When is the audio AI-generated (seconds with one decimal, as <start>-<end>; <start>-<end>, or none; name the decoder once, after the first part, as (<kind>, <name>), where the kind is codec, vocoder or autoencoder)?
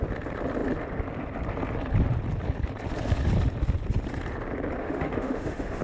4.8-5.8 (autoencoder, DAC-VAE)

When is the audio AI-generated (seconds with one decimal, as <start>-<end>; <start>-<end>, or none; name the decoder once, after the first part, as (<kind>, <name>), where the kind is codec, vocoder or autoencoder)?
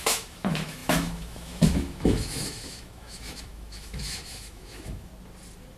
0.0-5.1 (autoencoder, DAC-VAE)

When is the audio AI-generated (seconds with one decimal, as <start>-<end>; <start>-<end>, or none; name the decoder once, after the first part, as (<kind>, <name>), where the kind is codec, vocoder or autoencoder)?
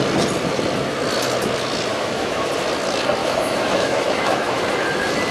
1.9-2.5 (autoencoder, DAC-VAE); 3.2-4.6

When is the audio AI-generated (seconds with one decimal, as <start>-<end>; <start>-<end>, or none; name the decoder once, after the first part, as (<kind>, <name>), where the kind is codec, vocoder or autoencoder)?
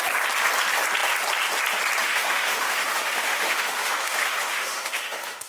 2.0-5.5 (autoencoder, DAC-VAE)